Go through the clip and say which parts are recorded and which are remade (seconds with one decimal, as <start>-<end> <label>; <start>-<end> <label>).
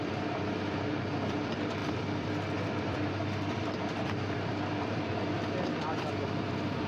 0.0-6.9 remade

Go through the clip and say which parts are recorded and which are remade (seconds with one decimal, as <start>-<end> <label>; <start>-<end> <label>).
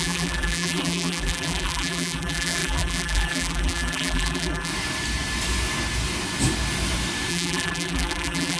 0.0-4.7 remade; 4.7-7.3 recorded; 7.3-8.6 remade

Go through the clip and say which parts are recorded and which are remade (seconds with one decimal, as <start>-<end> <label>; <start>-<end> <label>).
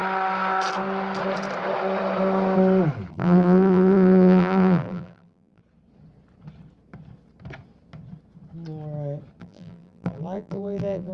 0.0-3.1 recorded; 3.1-5.6 remade; 5.6-9.4 recorded; 9.4-11.1 remade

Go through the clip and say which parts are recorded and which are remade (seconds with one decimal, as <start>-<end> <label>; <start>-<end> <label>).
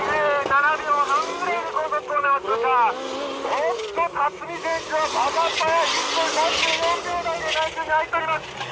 0.0-1.8 recorded; 1.8-2.5 remade; 2.5-4.7 recorded; 4.7-5.6 remade; 5.6-8.7 recorded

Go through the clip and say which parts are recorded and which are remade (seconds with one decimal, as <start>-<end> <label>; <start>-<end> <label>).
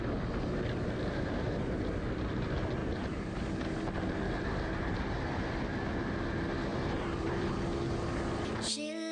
0.0-2.8 recorded; 2.8-3.5 remade; 3.5-6.7 recorded; 6.7-7.5 remade; 7.5-9.1 recorded